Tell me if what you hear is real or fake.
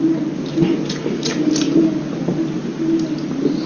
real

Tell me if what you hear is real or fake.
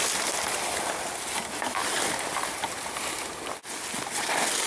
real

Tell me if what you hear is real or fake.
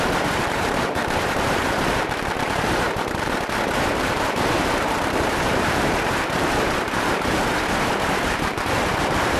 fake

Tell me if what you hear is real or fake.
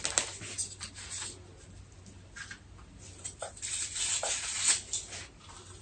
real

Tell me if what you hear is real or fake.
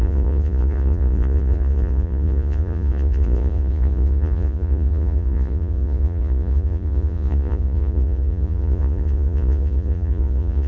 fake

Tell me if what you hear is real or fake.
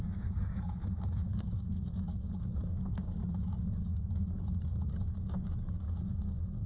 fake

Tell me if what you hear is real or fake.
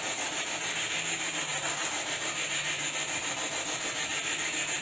real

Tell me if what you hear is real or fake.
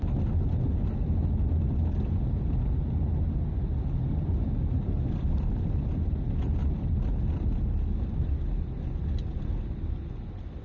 real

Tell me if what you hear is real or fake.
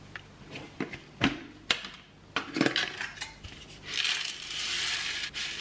real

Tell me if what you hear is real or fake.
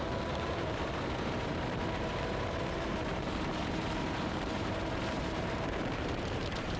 fake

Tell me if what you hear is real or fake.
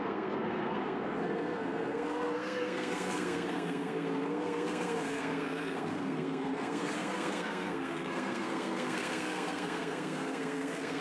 fake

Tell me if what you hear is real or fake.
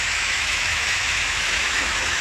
fake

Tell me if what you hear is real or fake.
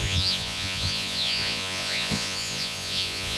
fake